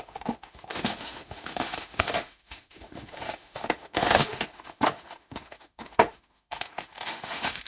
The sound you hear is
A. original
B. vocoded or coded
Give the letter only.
B